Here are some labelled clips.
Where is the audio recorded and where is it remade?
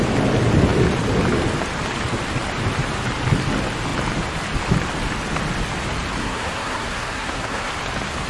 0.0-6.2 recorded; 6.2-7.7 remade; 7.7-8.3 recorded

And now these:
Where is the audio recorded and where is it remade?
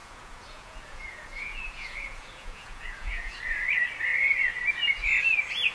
0.0-3.4 remade; 3.4-5.7 recorded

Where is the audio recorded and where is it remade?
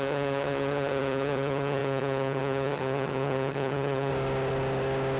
0.0-4.1 remade; 4.1-5.2 recorded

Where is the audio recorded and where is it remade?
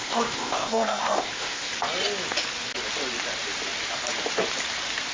0.0-1.7 remade; 1.7-5.1 recorded